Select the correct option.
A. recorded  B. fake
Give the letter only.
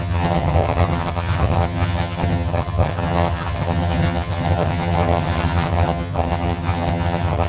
B